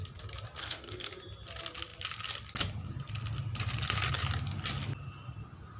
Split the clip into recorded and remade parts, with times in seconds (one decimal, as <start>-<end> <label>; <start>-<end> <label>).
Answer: 0.0-0.6 recorded; 0.6-1.1 remade; 1.1-5.8 recorded